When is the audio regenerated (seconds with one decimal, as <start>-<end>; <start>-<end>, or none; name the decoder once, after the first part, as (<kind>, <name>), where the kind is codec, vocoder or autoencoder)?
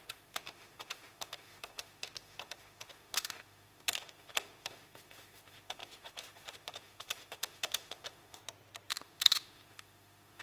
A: 0.0-8.4 (autoencoder, DAC-VAE); 8.9-10.4